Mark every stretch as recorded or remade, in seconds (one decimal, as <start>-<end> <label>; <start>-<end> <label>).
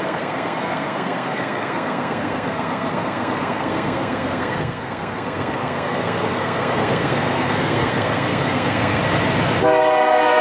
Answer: 0.0-9.0 remade; 9.0-10.0 recorded; 10.0-10.4 remade